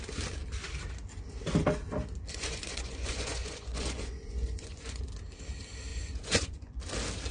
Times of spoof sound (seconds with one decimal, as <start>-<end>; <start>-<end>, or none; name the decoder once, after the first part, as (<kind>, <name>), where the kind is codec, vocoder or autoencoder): 2.3-5.0 (vocoder, Vocos); 5.9-6.8